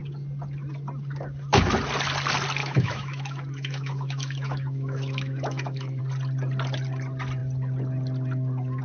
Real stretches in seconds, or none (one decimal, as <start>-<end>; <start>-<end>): 0.0-2.6; 6.0-8.8